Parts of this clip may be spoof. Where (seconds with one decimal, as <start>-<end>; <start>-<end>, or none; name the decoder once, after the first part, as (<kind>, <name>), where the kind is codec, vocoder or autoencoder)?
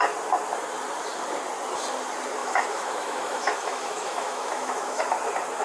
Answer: 2.4-5.0 (autoencoder, DAC-VAE)